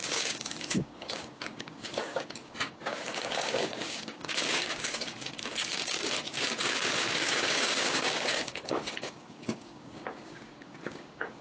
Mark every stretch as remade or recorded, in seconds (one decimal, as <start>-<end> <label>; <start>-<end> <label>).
0.0-11.4 remade